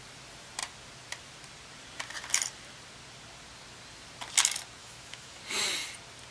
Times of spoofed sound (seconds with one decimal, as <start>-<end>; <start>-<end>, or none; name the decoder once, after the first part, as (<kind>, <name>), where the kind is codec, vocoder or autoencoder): 4.8-5.4 (autoencoder, DAC-VAE)